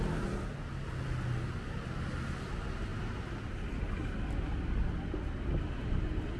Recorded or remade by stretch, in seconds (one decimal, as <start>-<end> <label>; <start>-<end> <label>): 0.0-2.9 recorded; 2.9-3.5 remade; 3.5-6.4 recorded